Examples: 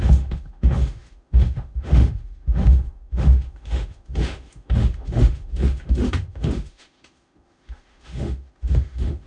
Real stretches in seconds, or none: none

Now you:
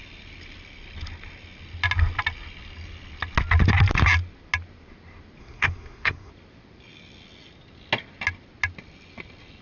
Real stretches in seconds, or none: 0.0-5.4; 6.3-9.6

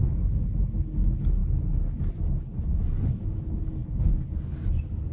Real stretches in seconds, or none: 0.0-3.8; 4.4-5.1

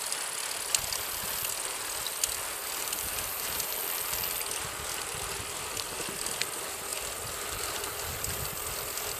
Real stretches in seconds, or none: 0.0-2.6; 3.8-9.2

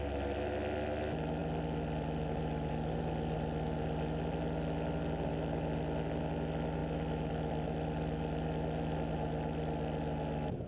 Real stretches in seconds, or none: 0.0-10.7

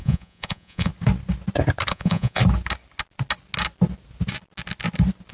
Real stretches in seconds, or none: 0.9-1.9; 2.4-5.3